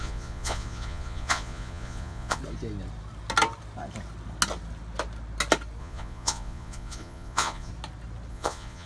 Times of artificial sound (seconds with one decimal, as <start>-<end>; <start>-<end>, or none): 0.0-2.4; 5.8-7.7; 8.3-8.9